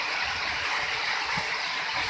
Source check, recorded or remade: remade